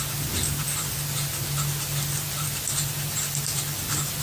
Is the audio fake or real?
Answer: real